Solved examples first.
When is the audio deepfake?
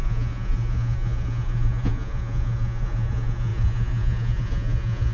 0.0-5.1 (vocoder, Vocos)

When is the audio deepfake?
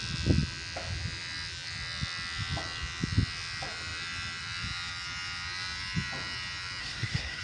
6.8-7.4 (codec, SNAC)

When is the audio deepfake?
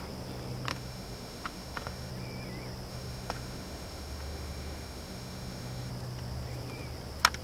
0.7-2.1 (autoencoder, DAC-VAE); 2.9-5.9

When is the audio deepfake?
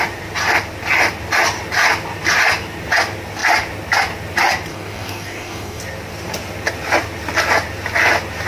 4.7-5.8 (codec, DAC)